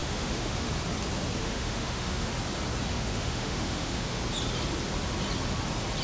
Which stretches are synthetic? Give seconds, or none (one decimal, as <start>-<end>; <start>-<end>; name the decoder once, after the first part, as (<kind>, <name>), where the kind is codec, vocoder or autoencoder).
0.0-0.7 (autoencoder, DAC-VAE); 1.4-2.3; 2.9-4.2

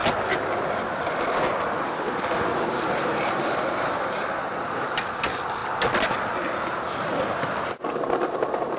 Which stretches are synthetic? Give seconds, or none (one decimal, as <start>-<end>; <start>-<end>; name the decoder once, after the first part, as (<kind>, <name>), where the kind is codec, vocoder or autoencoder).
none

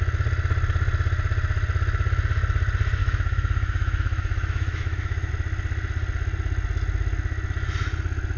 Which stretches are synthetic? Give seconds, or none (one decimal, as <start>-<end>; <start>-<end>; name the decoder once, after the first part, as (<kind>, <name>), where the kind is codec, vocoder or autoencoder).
3.0-5.3 (autoencoder, DAC-VAE)

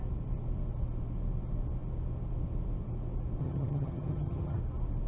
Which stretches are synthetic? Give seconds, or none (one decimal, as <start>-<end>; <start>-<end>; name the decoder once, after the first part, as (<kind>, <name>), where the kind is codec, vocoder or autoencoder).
3.4-4.6 (vocoder, HiFi-GAN)

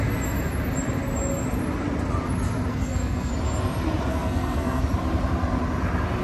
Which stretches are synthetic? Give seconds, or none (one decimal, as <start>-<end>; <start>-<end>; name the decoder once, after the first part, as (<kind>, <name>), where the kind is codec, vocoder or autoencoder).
2.7-3.3 (codec, SNAC); 4.1-4.8

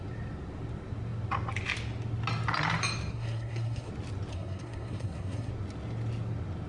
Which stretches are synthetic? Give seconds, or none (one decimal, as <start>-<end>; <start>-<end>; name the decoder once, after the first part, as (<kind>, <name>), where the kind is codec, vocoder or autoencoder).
3.1-3.9 (codec, SNAC); 4.3-5.5

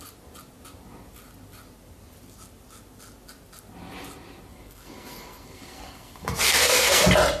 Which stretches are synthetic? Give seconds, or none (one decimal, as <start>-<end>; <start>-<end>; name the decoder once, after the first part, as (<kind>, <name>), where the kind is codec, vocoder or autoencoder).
4.5-7.0 (codec, SNAC)